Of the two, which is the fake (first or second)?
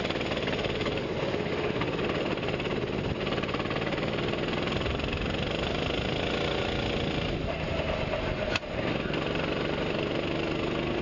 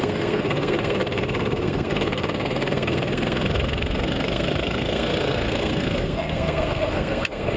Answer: second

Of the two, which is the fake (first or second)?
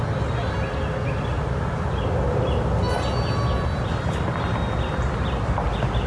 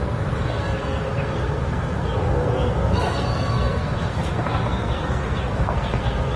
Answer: second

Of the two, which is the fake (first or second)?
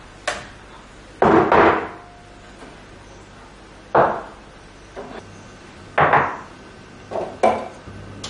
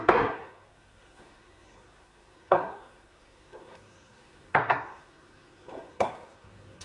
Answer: second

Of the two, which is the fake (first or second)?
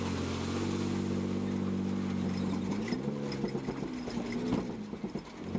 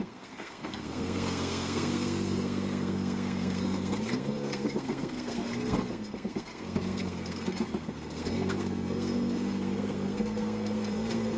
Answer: second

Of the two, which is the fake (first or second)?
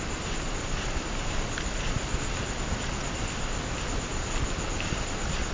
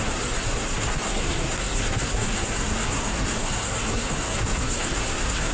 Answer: second